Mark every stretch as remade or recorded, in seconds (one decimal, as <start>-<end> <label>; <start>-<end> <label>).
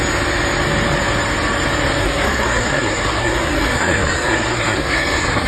0.0-2.0 recorded; 2.0-5.5 remade